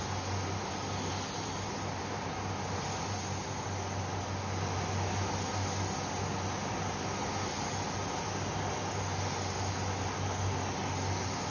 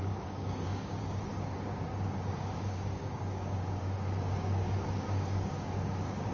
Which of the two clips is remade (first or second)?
second